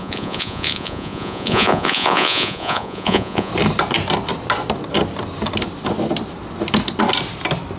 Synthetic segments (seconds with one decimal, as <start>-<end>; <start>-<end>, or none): 0.0-3.5